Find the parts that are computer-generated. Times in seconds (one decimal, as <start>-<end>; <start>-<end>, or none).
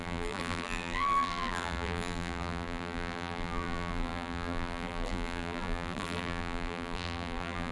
0.0-7.7